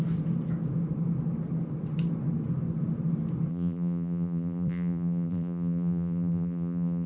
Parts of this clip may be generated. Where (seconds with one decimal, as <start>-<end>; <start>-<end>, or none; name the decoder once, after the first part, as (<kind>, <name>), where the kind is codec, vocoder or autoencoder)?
3.5-7.1 (vocoder, BigVGAN v2)